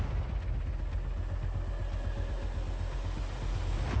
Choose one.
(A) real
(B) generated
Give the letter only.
A